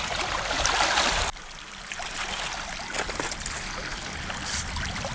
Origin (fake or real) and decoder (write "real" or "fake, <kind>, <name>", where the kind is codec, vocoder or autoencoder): real